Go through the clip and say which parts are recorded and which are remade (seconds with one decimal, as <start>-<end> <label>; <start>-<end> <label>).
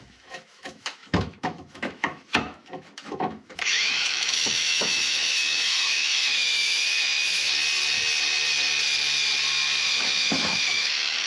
0.0-7.5 remade; 7.5-9.8 recorded; 9.8-11.3 remade